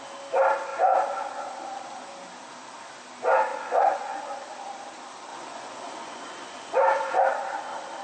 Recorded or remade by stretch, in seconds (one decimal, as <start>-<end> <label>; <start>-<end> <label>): 0.0-3.5 recorded; 3.5-4.2 remade; 4.2-5.3 recorded; 5.3-7.2 remade; 7.2-8.0 recorded